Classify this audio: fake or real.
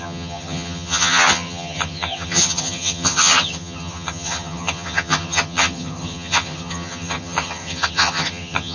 fake